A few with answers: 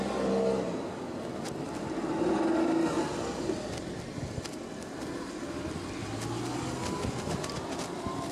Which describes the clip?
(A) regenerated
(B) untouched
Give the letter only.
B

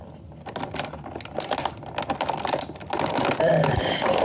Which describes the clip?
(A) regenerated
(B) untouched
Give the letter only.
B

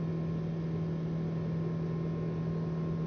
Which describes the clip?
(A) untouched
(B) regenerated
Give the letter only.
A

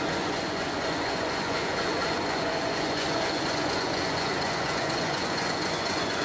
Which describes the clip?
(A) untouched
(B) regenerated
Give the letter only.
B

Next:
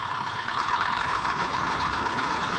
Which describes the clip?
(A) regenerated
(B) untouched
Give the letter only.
A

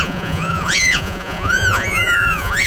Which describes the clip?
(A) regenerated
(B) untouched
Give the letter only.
A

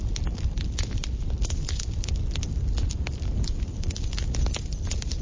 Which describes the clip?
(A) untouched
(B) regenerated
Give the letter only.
A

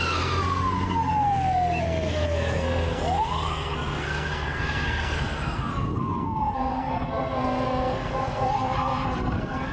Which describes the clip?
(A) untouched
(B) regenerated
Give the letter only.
B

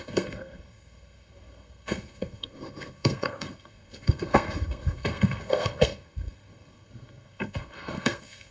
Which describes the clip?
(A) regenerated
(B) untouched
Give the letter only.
A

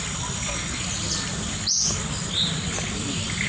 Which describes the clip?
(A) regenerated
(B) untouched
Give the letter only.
B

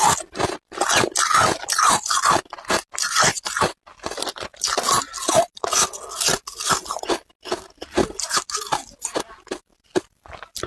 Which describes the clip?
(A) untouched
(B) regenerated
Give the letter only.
A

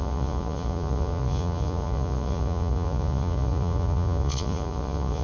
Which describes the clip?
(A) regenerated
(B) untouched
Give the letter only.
A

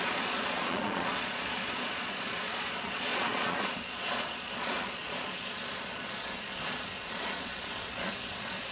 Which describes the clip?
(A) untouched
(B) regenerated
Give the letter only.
B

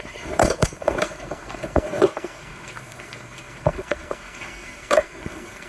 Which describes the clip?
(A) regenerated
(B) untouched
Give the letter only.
A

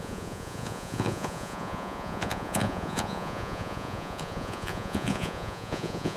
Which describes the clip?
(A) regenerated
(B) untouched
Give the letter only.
A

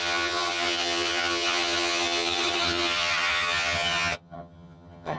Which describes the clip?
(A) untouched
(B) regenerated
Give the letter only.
B